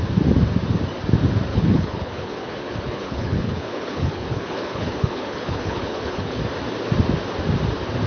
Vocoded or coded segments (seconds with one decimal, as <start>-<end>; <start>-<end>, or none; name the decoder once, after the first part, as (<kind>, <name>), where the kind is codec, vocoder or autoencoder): 1.5-6.4 (codec, HILCodec)